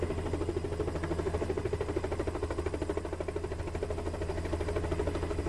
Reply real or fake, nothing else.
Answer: real